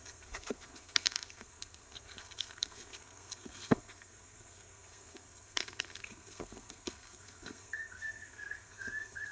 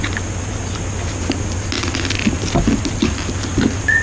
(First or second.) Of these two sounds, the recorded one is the second